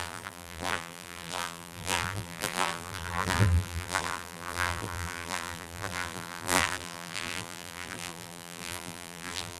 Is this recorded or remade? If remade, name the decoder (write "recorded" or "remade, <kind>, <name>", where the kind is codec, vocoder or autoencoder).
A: remade, vocoder, BigVGAN v2